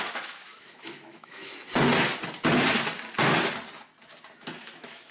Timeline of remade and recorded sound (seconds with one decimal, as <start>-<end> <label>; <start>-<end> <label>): 0.0-1.5 remade; 1.5-4.6 recorded; 4.6-5.1 remade